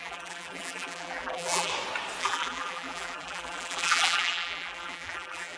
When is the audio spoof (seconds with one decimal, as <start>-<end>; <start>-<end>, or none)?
0.0-1.7; 2.2-5.6